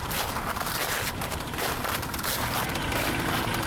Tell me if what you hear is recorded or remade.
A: remade